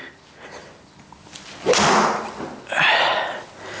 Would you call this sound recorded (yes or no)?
yes